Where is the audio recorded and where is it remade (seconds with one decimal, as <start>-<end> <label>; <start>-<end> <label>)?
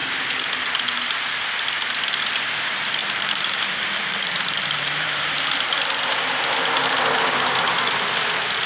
0.0-3.0 recorded; 3.0-5.2 remade; 5.2-8.7 recorded